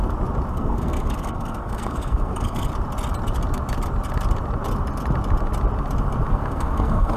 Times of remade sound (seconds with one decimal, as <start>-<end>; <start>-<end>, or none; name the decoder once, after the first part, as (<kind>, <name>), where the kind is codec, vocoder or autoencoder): 0.5-2.7 (codec, SNAC); 6.3-7.2